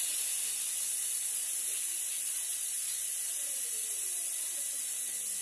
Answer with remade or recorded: remade